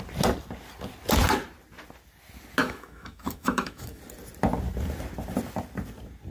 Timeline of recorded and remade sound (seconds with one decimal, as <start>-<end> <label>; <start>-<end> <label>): 0.0-2.6 recorded; 2.6-4.0 remade; 4.0-6.3 recorded